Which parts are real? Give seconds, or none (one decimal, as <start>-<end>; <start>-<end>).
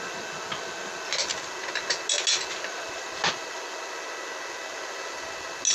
0.0-5.7